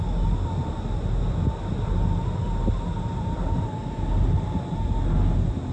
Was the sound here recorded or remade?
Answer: recorded